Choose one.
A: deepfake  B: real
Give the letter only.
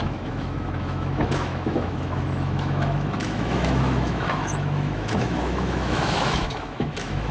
A